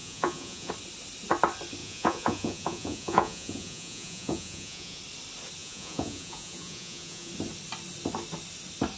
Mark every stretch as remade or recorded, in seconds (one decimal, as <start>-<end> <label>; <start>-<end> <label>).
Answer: 0.0-0.7 remade; 0.7-1.8 recorded; 1.8-5.0 remade; 5.0-5.6 recorded; 5.6-7.3 remade; 7.3-9.0 recorded